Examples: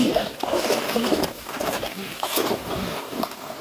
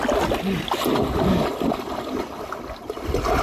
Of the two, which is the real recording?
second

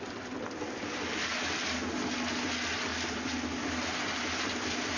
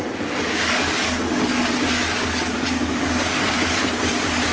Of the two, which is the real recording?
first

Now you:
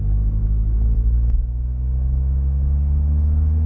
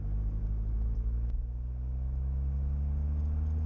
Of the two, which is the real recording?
second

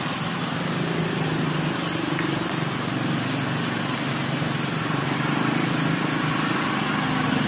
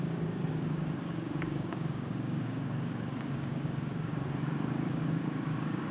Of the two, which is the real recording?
first